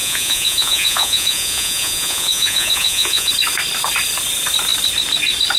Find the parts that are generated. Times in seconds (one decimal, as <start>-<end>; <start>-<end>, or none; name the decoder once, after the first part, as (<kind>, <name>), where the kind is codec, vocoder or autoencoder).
0.0-3.3 (vocoder, Vocos)